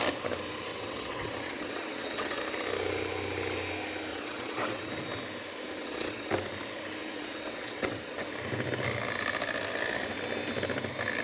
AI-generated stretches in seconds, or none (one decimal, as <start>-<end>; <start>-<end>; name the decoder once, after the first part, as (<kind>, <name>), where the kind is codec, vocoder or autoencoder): 0.7-2.4 (vocoder, WaveNeXt); 4.1-4.9; 5.8-6.3; 7.0-8.3

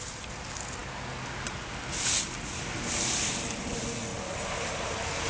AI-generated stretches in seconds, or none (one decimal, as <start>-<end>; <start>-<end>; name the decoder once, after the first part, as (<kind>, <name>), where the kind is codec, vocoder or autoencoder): none

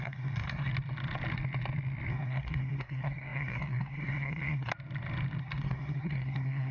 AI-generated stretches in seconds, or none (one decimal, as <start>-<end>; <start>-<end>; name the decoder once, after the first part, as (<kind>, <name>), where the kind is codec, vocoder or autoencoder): 0.0-0.7 (codec, SNAC); 2.1-4.7; 5.4-6.7

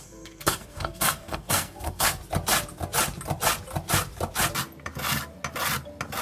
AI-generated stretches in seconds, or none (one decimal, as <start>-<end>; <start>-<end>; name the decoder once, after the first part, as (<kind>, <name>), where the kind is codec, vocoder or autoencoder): 0.0-2.2 (codec, SNAC)

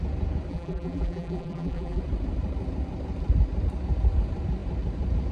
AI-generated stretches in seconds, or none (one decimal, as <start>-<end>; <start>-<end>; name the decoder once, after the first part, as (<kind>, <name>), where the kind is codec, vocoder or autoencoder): 0.5-2.0 (vocoder, BigVGAN v2)